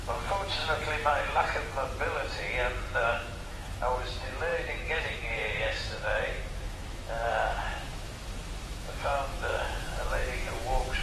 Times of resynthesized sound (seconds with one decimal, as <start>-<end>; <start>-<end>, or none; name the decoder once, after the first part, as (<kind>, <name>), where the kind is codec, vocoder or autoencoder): 0.0-0.6 (autoencoder, DAC-VAE); 1.1-1.7; 3.0-11.0